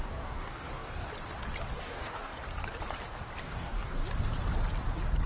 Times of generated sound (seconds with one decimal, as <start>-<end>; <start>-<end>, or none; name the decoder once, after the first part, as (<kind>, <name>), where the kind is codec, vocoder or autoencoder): 0.0-1.1 (codec, DAC); 1.8-2.3; 3.4-4.0